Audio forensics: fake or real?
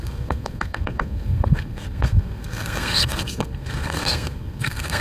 fake